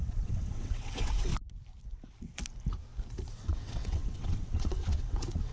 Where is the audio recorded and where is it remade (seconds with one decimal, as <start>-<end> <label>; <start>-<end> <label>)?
0.0-1.3 remade; 1.3-3.3 recorded; 3.3-5.5 remade